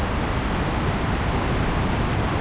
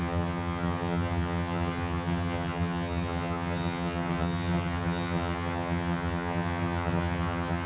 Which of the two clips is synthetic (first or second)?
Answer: second